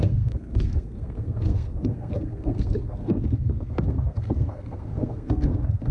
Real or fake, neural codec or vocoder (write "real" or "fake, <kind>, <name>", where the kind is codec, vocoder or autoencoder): fake, codec, SNAC